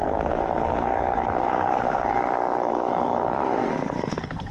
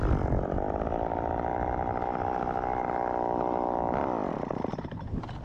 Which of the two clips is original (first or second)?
second